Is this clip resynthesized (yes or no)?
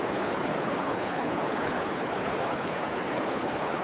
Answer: yes